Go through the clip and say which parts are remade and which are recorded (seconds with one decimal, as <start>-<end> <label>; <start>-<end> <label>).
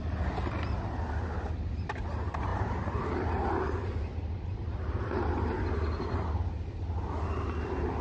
0.0-8.0 recorded